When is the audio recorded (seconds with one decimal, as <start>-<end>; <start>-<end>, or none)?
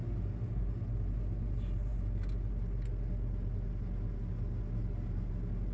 0.0-5.7